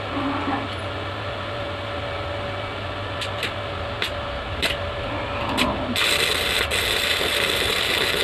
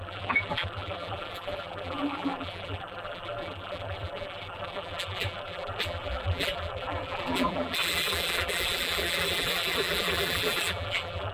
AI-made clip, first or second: second